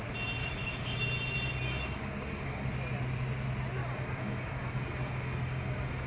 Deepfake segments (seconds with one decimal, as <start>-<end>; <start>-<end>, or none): 0.4-1.0; 1.9-2.7; 3.8-6.1